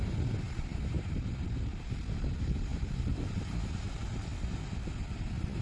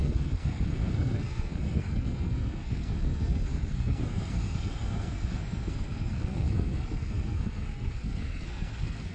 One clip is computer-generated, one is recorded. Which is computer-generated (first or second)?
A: second